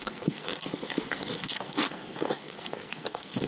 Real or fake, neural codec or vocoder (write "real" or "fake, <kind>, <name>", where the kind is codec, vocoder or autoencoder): fake, codec, SNAC